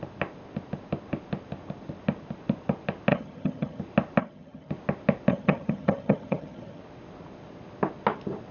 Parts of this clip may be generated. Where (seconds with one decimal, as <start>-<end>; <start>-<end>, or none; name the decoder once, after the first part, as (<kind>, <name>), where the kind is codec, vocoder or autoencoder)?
3.1-3.8 (vocoder, HiFi-GAN); 4.2-4.7; 5.3-6.8